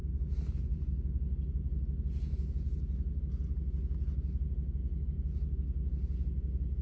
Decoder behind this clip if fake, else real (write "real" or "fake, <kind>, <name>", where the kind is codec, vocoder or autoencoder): real